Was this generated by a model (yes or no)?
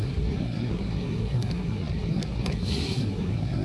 yes